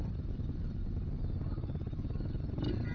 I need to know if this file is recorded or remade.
recorded